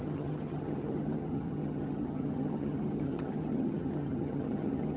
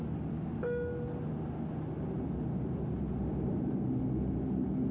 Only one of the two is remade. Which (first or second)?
first